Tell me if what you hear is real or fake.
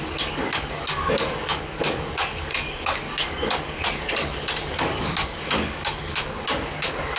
fake